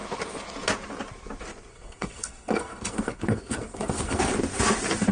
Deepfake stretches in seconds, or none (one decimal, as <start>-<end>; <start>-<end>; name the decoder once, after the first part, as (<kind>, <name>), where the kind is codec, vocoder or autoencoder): 1.7-4.2 (codec, SNAC)